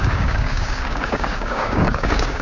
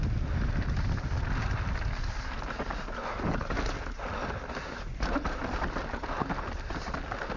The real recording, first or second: second